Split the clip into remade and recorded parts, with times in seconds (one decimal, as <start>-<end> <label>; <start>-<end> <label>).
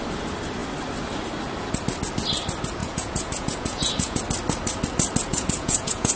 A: 0.0-2.8 recorded; 2.8-4.2 remade; 4.2-5.3 recorded; 5.3-6.2 remade